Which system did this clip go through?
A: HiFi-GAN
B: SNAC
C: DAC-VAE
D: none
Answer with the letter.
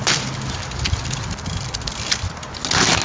D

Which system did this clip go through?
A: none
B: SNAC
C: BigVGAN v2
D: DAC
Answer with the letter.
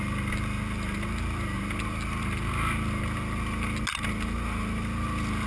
A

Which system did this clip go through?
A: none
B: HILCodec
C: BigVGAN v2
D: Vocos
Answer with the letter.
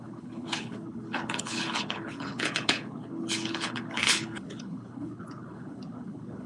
B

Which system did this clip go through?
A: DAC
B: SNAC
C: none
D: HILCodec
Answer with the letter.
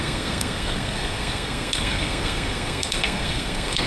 B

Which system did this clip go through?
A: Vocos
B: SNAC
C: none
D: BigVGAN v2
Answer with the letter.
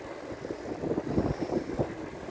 C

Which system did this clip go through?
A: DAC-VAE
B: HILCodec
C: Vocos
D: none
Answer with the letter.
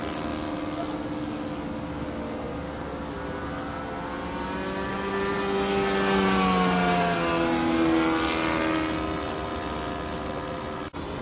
D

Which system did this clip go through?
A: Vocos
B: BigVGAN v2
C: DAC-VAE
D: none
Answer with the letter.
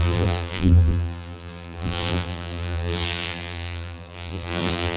B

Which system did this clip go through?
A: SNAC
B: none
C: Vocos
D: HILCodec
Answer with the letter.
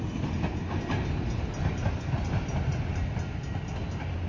B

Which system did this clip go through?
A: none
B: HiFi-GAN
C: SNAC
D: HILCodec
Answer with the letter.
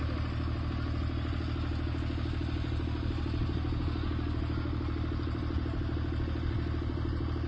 A